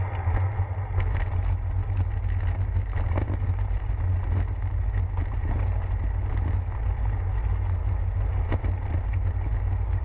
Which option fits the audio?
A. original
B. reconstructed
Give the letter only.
A